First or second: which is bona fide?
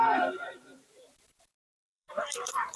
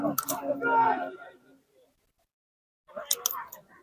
second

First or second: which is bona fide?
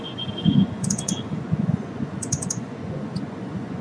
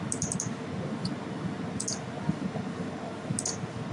second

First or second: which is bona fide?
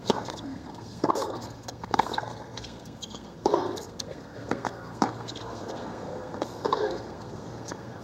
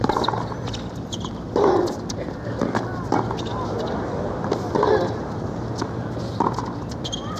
second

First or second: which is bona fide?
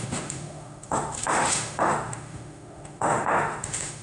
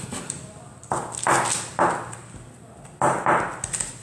second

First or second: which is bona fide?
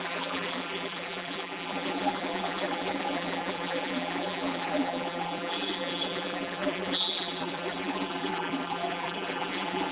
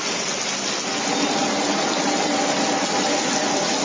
second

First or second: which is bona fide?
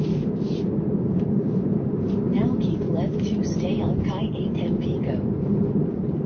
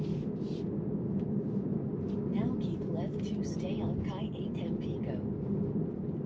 second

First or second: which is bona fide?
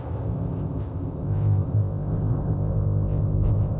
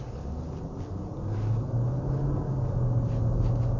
second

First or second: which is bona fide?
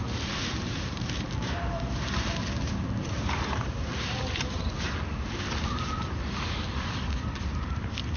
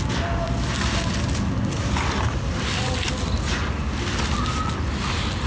second